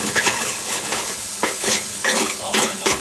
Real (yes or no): no